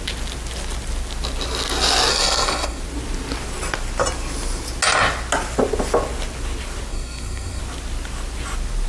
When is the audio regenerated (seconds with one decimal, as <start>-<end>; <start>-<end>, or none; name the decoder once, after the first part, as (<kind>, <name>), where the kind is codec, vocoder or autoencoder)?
2.1-2.8 (codec, SNAC); 6.9-7.6